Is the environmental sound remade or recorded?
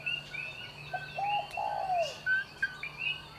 recorded